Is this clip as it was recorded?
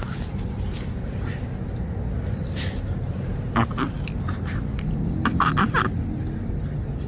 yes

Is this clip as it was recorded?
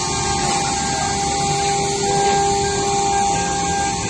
yes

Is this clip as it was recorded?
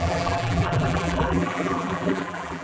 no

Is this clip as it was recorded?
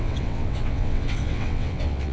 no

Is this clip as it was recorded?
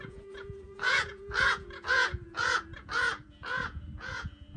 no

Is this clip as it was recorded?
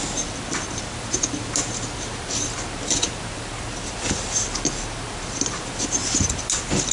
yes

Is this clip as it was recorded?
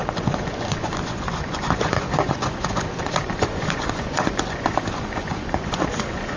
no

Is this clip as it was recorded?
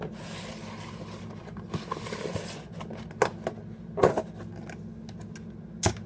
yes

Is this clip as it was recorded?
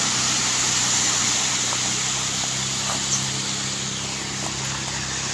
yes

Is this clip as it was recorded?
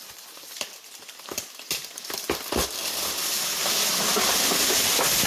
yes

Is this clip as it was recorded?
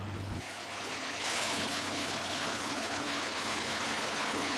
no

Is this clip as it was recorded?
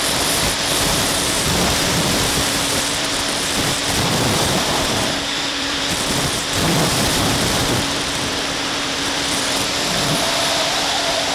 no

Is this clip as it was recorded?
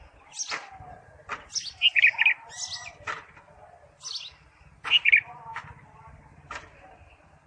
yes